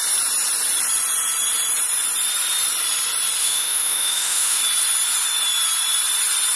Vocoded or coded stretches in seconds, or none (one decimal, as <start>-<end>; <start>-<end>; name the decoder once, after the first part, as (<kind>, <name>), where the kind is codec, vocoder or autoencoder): 3.4-4.6 (autoencoder, DAC-VAE)